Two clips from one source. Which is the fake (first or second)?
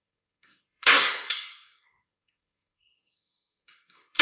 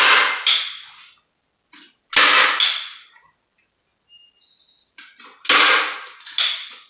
first